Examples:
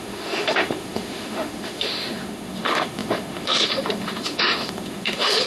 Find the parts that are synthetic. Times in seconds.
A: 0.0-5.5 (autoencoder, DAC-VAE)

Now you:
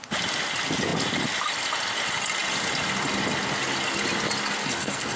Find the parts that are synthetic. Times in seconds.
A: 4.6-5.2 (codec, SNAC)

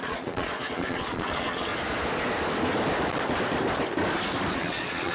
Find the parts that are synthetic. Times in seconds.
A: 0.0-1.7 (vocoder, Vocos); 4.5-5.1

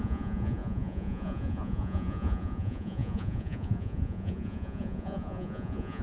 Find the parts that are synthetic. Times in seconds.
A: 0.0-6.0 (vocoder, Vocos)

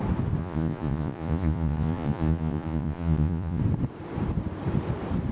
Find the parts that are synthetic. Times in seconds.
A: 0.4-3.6 (vocoder, Vocos)

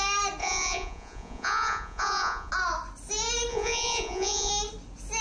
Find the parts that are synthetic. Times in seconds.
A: 0.4-2.5 (vocoder, Vocos); 3.5-4.5

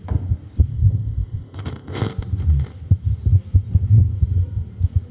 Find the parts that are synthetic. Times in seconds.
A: 0.7-2.0 (codec, ZipCodec)

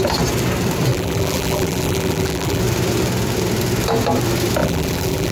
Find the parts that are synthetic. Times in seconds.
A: 0.9-2.6 (vocoder, BigVGAN v2); 4.6-5.3